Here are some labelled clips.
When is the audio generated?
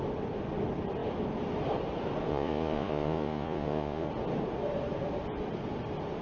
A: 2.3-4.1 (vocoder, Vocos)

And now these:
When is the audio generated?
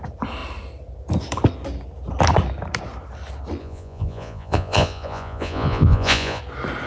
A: 3.6-6.4 (vocoder, Vocos)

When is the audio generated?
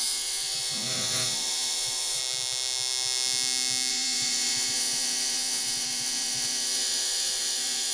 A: 0.0-2.2 (vocoder, Vocos); 3.9-7.9